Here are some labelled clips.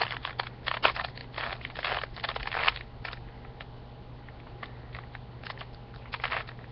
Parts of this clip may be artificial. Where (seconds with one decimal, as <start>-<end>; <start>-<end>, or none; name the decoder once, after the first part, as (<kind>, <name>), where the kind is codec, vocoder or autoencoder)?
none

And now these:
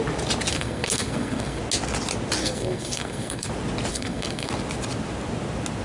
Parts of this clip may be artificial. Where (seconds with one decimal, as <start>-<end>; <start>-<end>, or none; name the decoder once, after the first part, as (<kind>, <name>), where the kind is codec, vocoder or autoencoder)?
0.5-1.6 (codec, SNAC); 2.4-3.5; 3.9-4.5

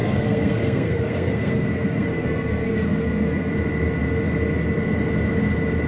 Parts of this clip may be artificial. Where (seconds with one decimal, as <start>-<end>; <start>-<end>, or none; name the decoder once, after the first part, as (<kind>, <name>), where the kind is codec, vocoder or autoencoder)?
0.0-3.5 (codec, SNAC)

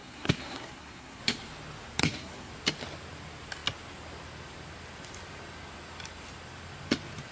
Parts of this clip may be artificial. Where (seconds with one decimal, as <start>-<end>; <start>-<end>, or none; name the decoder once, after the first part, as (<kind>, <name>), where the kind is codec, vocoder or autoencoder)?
0.0-1.2 (codec, SNAC); 2.0-2.5